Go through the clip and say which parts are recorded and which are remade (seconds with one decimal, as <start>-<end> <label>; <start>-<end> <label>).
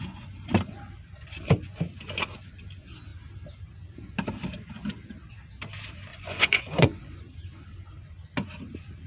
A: 0.0-6.1 recorded; 6.1-7.2 remade; 7.2-9.1 recorded